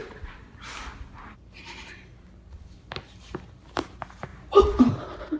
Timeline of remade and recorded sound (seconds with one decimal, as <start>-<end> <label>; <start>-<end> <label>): 0.0-5.4 recorded